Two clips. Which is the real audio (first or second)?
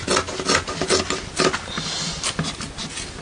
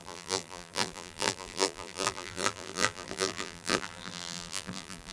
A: first